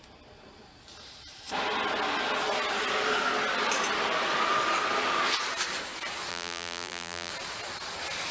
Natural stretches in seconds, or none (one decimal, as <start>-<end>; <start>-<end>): 0.0-6.3; 7.3-8.3